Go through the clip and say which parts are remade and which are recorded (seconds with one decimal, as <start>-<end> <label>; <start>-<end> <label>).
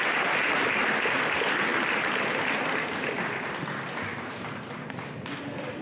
0.0-4.1 recorded; 4.1-5.1 remade; 5.1-5.8 recorded